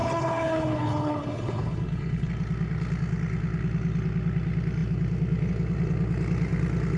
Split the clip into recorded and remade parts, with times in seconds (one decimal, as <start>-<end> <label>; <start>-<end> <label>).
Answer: 0.0-2.3 remade; 2.3-7.0 recorded